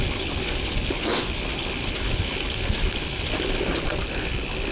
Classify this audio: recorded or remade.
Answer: recorded